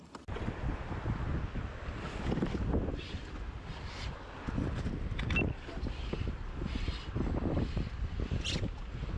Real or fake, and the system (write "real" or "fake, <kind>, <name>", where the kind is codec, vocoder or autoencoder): real